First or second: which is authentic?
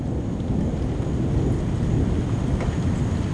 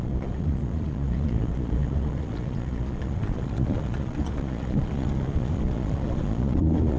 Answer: first